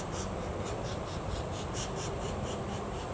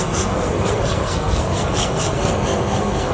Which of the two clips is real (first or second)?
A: first